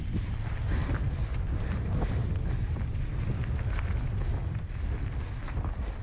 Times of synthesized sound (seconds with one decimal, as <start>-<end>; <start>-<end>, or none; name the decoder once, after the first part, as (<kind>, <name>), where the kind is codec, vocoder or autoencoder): none